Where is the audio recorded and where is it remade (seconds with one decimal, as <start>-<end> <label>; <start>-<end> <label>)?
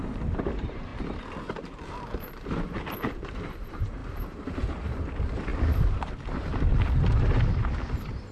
0.0-0.9 remade; 0.9-1.4 recorded; 1.4-5.5 remade; 5.5-6.1 recorded; 6.1-6.5 remade; 6.5-7.9 recorded; 7.9-8.3 remade